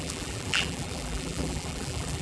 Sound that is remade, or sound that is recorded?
remade